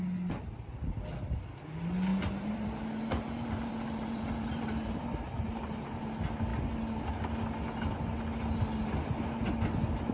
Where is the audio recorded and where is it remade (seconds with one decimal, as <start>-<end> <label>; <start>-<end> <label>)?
0.0-2.1 recorded; 2.1-6.0 remade; 6.0-10.1 recorded